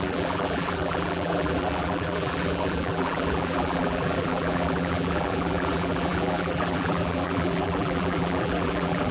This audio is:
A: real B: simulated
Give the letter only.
B